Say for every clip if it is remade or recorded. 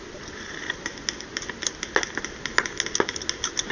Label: recorded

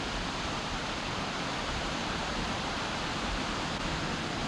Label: remade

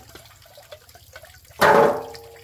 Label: recorded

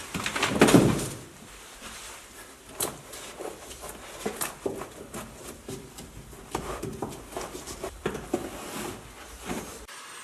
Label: remade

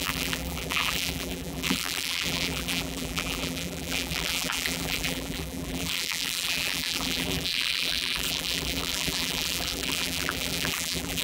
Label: remade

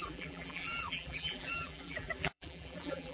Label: remade